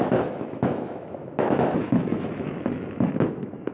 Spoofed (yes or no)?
yes